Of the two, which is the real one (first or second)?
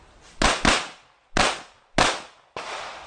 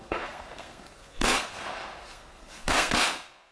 first